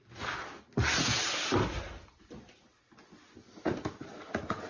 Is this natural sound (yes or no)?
yes